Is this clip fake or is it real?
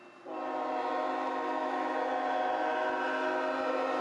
real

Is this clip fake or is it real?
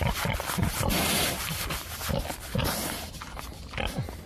real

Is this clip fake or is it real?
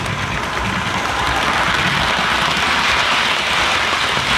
real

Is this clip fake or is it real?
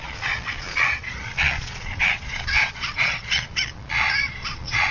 fake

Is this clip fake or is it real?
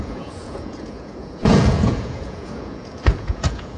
fake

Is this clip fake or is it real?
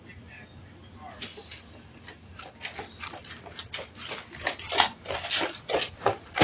real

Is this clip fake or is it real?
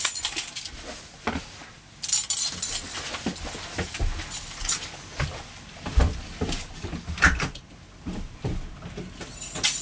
real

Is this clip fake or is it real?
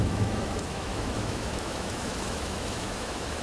fake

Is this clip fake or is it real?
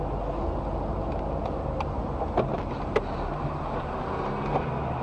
real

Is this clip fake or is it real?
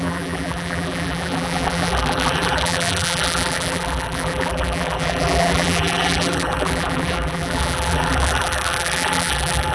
fake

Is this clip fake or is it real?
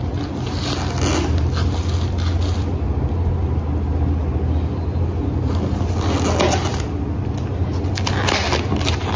real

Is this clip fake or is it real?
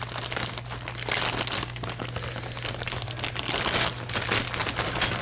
real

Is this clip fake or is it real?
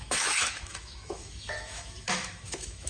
fake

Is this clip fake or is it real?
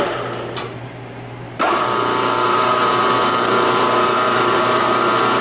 real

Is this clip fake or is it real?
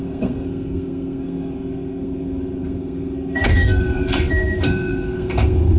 fake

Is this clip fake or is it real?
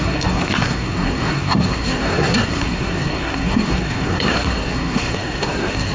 fake